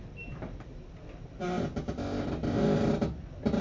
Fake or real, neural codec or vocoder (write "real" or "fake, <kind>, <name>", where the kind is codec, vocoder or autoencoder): real